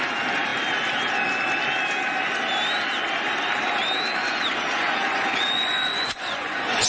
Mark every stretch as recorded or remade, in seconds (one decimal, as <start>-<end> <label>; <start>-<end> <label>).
0.0-4.2 recorded; 4.2-6.9 remade